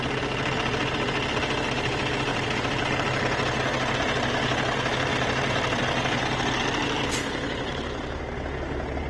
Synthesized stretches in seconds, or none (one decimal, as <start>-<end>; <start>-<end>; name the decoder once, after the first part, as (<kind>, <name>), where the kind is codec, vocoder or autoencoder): 2.3-3.2 (vocoder, BigVGAN v2); 5.1-5.8; 6.8-8.2